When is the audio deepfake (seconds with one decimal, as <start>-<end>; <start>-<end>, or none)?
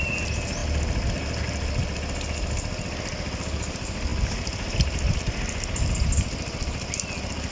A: none